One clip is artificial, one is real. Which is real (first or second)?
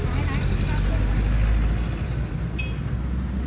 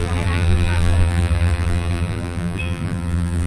first